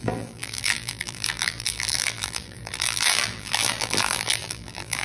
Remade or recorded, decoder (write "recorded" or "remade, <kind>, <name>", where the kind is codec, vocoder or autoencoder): remade, vocoder, BigVGAN v2